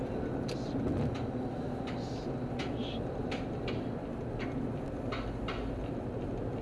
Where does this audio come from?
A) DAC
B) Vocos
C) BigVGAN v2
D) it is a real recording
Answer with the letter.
D